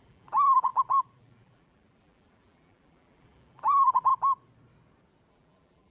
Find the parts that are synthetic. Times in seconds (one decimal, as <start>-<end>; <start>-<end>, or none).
0.0-4.1; 5.3-5.9